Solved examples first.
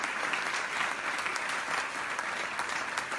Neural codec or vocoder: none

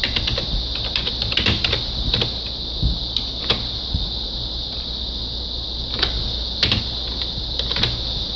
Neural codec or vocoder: none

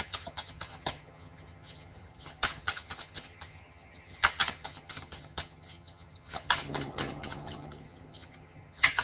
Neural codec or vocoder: vocoder, HiFi-GAN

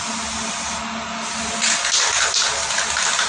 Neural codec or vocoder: none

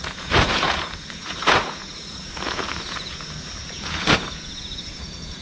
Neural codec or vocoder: vocoder, Vocos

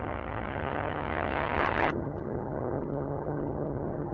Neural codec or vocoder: vocoder, HiFi-GAN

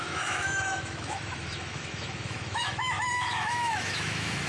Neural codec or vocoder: autoencoder, DAC-VAE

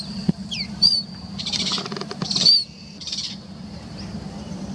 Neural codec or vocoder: vocoder, BigVGAN v2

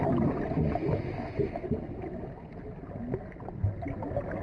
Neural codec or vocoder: none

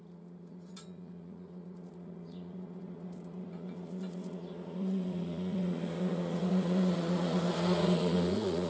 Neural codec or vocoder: vocoder, Vocos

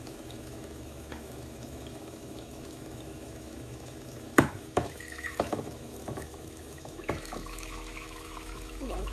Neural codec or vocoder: autoencoder, DAC-VAE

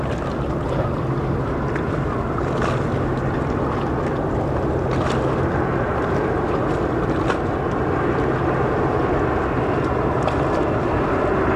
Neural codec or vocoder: none